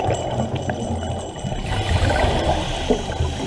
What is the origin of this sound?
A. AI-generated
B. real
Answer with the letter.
B